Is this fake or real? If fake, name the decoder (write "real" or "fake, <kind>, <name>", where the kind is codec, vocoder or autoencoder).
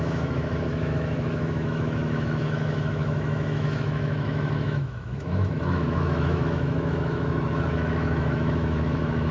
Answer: fake, autoencoder, DAC-VAE